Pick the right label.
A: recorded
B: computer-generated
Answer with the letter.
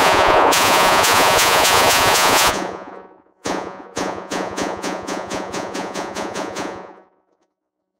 B